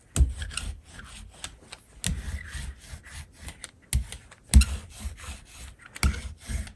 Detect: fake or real real